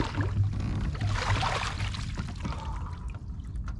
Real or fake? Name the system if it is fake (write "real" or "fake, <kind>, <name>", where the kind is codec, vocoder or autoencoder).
real